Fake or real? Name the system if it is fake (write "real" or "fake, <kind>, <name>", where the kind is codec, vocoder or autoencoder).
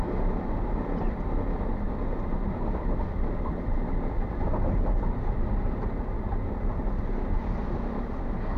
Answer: real